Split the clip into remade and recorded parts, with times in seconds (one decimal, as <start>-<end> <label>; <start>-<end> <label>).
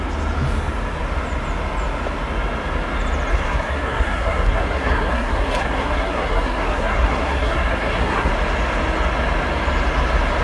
0.0-3.3 recorded; 3.3-8.3 remade; 8.3-10.4 recorded